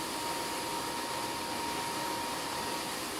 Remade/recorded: recorded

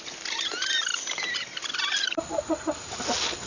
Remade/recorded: recorded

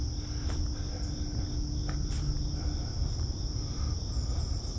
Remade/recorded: recorded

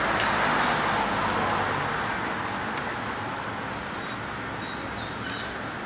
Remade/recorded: recorded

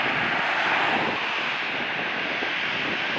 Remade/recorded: recorded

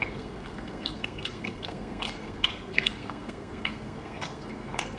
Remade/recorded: remade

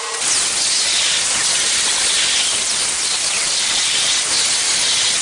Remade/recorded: recorded